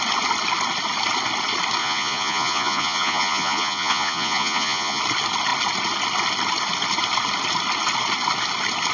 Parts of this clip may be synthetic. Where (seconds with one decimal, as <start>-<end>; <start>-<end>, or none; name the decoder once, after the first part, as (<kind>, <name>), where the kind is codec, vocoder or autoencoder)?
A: 1.8-5.0 (vocoder, Vocos)

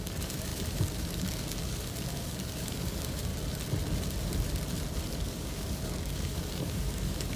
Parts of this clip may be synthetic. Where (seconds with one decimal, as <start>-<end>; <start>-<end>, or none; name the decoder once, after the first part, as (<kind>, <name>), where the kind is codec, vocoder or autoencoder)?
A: 0.0-3.3 (codec, DAC); 5.1-7.4

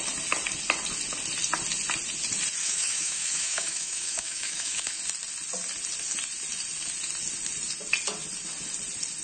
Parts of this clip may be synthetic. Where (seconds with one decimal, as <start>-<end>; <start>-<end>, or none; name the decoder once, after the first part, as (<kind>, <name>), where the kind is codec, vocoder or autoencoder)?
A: 2.6-5.0 (autoencoder, DAC-VAE)

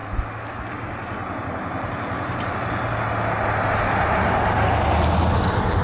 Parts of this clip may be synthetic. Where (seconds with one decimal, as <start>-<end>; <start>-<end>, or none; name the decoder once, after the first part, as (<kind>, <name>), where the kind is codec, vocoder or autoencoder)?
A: none

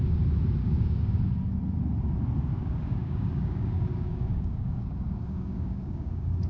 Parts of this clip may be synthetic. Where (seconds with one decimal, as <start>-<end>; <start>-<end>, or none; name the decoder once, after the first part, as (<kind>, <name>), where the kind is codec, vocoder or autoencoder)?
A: 0.6-1.2 (codec, DAC); 2.6-6.5

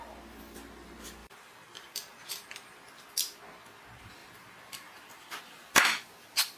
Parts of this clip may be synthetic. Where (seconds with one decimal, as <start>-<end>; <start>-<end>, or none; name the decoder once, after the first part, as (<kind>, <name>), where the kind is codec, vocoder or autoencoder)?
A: 1.2-3.1 (vocoder, BigVGAN v2); 4.2-5.4

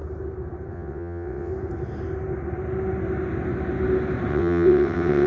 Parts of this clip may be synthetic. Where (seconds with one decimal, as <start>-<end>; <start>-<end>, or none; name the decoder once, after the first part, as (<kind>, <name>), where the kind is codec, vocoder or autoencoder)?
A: 0.7-1.5 (vocoder, WaveNeXt); 4.3-5.3

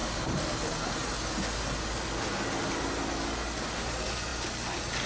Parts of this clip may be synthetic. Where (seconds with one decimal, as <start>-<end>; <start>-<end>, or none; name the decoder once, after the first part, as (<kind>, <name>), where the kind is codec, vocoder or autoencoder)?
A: none